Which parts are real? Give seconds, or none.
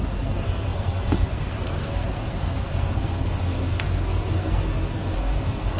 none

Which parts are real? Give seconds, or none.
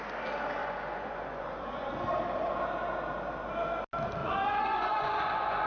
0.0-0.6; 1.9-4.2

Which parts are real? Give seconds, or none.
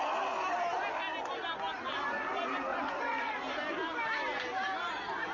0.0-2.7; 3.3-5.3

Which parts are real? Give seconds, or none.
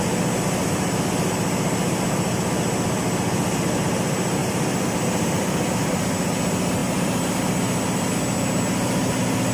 0.0-4.4; 5.9-9.5